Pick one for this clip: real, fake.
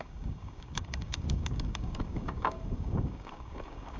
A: fake